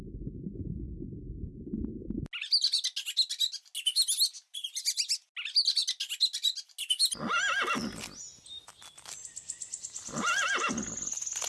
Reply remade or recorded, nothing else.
recorded